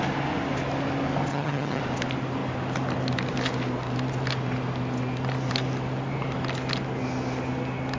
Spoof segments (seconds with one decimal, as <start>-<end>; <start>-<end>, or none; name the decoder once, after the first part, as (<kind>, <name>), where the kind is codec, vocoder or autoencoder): 1.3-1.8 (vocoder, HiFi-GAN)